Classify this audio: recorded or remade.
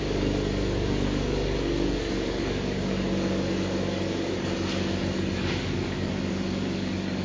remade